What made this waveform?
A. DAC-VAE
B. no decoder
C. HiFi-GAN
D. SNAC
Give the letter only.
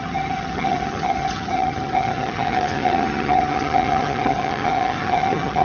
C